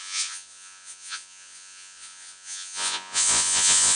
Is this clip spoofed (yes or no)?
yes